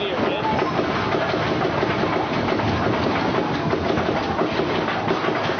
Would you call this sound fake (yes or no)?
no